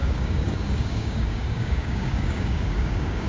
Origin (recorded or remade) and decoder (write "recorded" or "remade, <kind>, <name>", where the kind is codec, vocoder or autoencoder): remade, codec, DAC